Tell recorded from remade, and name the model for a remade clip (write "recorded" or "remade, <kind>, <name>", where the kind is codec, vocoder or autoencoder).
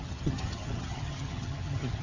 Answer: remade, vocoder, HiFi-GAN